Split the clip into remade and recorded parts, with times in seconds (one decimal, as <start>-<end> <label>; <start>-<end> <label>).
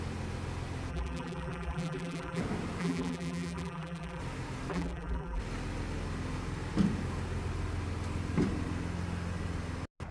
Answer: 0.0-0.9 recorded; 0.9-2.4 remade; 2.4-2.8 recorded; 2.8-4.2 remade; 4.2-4.7 recorded; 4.7-5.4 remade; 5.4-10.1 recorded